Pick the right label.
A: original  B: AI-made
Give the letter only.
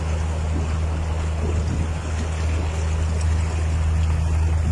A